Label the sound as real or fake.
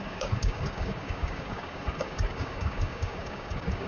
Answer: fake